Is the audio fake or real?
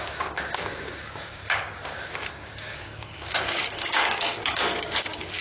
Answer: fake